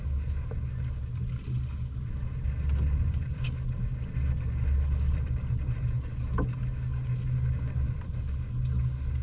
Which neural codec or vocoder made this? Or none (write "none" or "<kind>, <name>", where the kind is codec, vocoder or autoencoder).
none